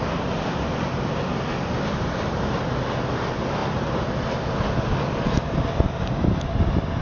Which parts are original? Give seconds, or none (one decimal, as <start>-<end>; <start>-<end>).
0.0-7.0